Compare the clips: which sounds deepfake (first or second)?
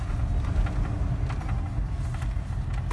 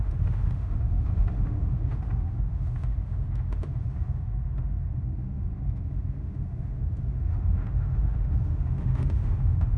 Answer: second